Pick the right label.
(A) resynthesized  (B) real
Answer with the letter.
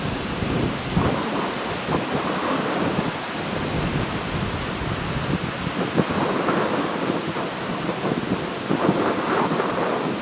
B